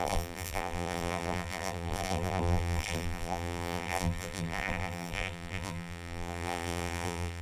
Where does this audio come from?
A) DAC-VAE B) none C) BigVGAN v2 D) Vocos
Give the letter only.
C